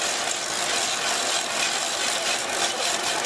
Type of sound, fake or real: real